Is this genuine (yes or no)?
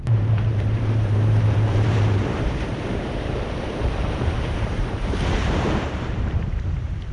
no